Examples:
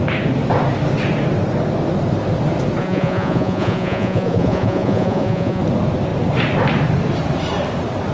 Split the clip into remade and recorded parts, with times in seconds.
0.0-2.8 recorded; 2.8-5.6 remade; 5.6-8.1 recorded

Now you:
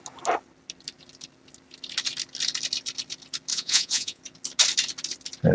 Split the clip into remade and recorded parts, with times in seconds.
0.0-3.5 recorded; 3.5-4.2 remade; 4.2-5.5 recorded

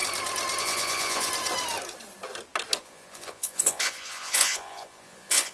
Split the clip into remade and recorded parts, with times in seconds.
0.0-0.6 recorded; 0.6-1.3 remade; 1.3-2.8 recorded; 2.8-5.5 remade

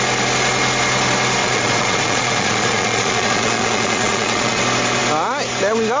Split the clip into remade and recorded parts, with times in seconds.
0.0-1.4 recorded; 1.4-4.6 remade; 4.6-6.0 recorded

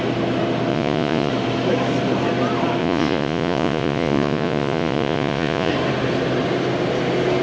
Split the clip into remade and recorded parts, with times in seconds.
0.0-0.7 recorded; 0.7-1.3 remade; 1.3-2.8 recorded; 2.8-5.7 remade; 5.7-7.4 recorded

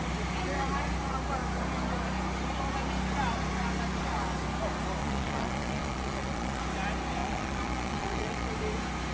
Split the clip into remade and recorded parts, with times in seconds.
0.0-5.0 recorded; 5.0-6.6 remade; 6.6-7.2 recorded; 7.2-8.5 remade; 8.5-9.1 recorded

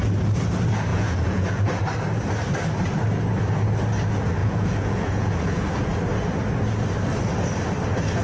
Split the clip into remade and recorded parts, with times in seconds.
0.0-0.9 recorded; 0.9-1.8 remade; 1.8-4.4 recorded; 4.4-5.7 remade; 5.7-8.2 recorded